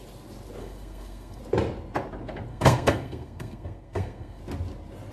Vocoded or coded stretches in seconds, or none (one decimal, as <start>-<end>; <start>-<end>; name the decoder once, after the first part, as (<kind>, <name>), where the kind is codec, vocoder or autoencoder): 0.6-1.4 (codec, SNAC); 2.5-4.4